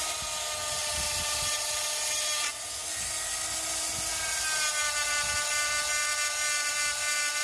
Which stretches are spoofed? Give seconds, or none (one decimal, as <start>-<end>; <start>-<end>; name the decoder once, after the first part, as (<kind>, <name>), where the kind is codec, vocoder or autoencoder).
none